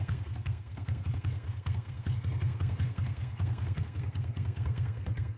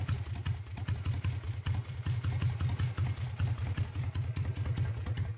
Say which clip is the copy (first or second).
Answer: first